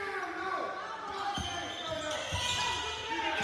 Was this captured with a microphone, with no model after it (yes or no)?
yes